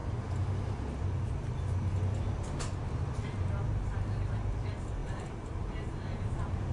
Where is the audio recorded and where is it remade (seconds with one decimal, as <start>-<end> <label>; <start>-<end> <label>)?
0.0-3.6 recorded; 3.6-6.7 remade